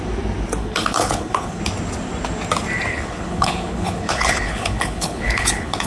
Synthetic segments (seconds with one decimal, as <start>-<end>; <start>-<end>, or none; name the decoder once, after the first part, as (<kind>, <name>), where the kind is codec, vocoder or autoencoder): 0.6-1.6 (codec, HILCodec); 2.9-5.9